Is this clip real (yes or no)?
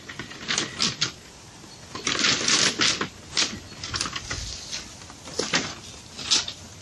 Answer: yes